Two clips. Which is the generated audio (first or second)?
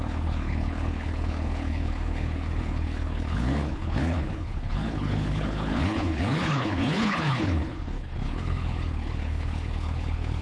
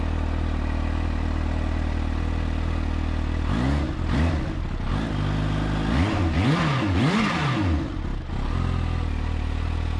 first